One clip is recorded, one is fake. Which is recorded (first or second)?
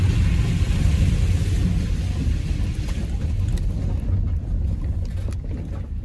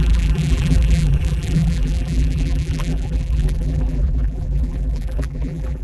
first